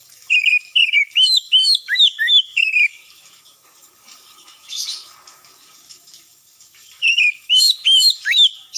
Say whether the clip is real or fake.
fake